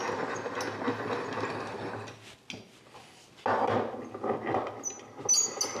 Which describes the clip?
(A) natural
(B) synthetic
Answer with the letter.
A